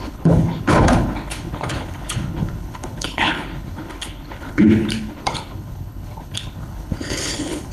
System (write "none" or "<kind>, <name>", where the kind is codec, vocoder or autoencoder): codec, HILCodec